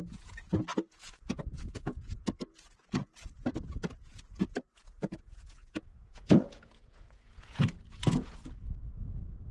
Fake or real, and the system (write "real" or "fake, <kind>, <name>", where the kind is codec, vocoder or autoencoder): fake, vocoder, Vocos